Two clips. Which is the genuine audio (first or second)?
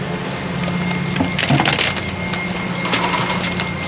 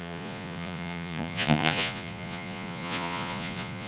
first